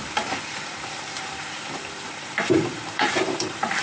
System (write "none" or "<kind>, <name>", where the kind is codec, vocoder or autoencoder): vocoder, BigVGAN v2